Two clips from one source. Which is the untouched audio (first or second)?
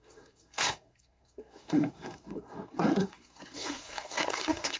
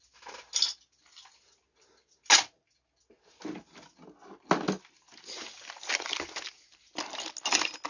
second